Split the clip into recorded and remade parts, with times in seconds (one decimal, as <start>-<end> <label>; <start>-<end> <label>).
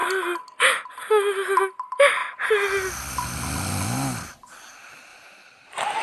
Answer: 0.0-6.0 recorded